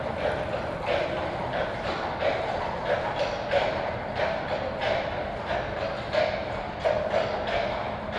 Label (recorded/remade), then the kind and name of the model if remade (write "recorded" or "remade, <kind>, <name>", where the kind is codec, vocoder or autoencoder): recorded